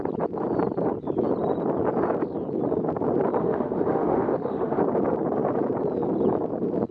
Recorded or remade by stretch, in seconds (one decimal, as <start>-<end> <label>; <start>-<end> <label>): 0.0-3.4 recorded; 3.4-4.8 remade; 4.8-6.9 recorded